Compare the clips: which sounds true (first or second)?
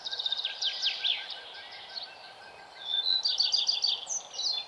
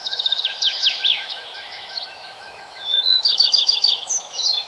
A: first